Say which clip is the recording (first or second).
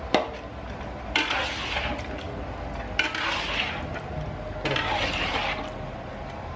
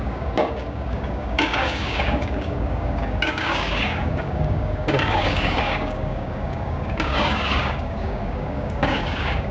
first